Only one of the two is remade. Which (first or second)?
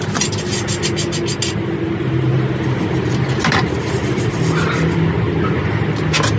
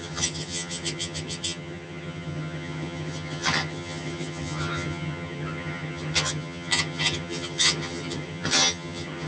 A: second